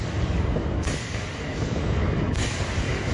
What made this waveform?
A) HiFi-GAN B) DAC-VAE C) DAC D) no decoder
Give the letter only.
C